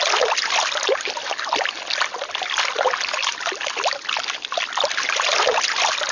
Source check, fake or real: real